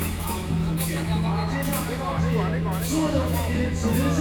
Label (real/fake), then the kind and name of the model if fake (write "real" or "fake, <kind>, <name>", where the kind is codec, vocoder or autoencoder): fake, autoencoder, DAC-VAE